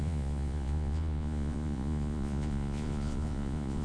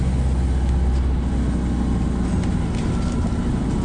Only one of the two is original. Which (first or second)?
second